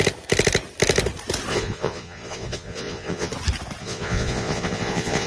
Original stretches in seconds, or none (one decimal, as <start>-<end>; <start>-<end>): 0.0-1.5; 3.3-3.8